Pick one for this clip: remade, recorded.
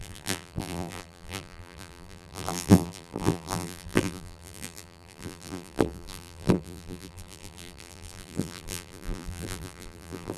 remade